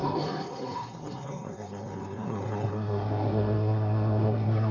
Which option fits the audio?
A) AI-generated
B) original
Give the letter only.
A